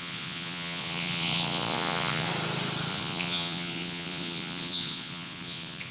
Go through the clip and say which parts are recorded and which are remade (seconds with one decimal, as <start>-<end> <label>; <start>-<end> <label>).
0.0-2.3 remade; 2.3-2.9 recorded; 2.9-5.9 remade